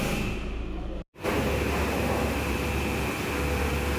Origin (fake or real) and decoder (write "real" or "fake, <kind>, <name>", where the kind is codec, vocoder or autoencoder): real